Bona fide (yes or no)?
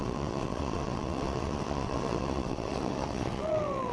no